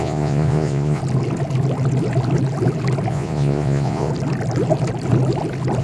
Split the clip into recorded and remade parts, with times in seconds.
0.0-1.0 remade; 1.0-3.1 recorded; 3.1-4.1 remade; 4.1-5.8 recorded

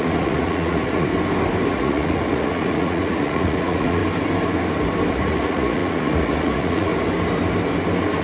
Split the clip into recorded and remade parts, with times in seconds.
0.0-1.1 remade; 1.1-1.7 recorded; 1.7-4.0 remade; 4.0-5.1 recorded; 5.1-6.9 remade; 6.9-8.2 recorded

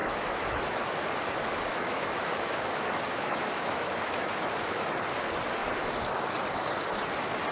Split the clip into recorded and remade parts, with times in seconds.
0.0-1.0 remade; 1.0-1.7 recorded; 1.7-5.0 remade; 5.0-7.5 recorded

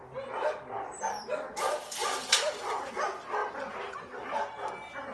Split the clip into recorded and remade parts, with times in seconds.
0.0-2.0 recorded; 2.0-2.9 remade; 2.9-3.4 recorded; 3.4-4.3 remade; 4.3-5.1 recorded